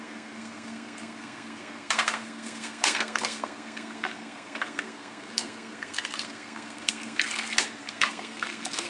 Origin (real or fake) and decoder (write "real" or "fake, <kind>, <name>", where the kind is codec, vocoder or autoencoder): fake, codec, SNAC